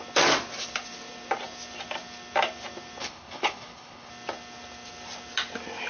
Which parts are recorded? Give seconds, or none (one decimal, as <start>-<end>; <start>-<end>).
0.0-3.0; 4.1-5.9